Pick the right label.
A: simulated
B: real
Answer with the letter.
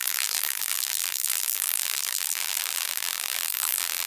A